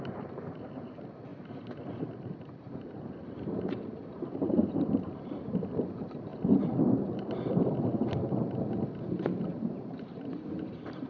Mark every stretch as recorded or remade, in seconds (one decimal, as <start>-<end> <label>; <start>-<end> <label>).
0.0-6.3 remade; 6.3-9.1 recorded; 9.1-11.1 remade